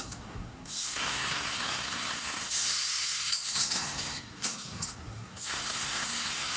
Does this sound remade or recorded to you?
remade